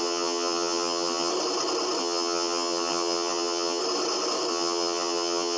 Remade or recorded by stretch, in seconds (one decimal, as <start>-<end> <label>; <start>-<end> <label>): 0.0-1.3 remade; 1.3-2.0 recorded; 2.0-3.8 remade; 3.8-4.5 recorded; 4.5-5.6 remade